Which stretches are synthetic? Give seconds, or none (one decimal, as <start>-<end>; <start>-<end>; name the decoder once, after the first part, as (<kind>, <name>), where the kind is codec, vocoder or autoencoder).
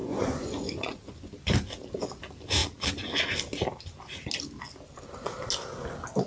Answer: 0.0-1.3 (vocoder, Vocos)